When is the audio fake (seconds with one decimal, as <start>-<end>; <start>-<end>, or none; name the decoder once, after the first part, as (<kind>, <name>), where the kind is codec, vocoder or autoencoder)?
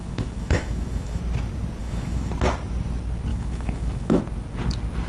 0.0-1.2 (autoencoder, DAC-VAE); 1.8-2.3; 3.3-4.2